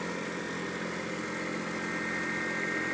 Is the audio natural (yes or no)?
yes